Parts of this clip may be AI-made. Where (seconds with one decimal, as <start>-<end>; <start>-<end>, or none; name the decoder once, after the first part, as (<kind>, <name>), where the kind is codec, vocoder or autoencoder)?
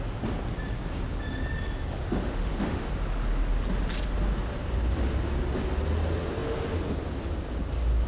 2.0-2.9 (autoencoder, DAC-VAE)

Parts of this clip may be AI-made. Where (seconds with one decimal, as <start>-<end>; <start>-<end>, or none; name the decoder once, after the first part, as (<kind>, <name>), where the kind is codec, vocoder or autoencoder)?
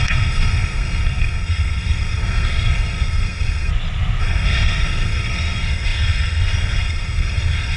0.0-3.7 (codec, SNAC); 4.2-7.8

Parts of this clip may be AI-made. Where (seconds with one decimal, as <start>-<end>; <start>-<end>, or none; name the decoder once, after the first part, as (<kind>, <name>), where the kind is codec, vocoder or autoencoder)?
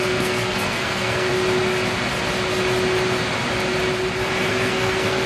0.0-1.3 (codec, SNAC); 4.5-5.3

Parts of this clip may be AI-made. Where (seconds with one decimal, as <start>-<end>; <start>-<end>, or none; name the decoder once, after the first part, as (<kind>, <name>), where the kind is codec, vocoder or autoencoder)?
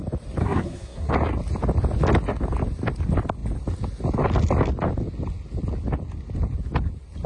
0.4-1.1 (codec, SNAC)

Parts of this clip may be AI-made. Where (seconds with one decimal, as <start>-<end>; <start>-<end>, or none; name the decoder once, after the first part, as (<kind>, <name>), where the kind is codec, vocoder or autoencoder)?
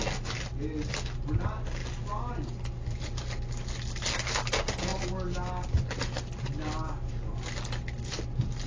none